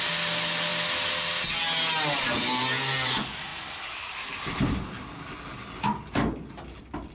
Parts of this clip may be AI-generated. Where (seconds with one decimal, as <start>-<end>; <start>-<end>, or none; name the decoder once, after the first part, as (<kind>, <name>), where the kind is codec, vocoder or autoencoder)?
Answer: none